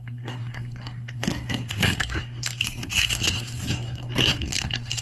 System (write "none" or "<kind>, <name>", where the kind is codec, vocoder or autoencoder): codec, SNAC